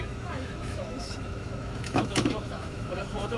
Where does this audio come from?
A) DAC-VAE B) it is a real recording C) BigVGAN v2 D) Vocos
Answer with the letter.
A